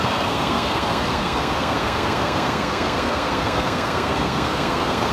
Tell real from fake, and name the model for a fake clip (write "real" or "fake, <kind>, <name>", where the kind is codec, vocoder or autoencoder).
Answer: fake, codec, SNAC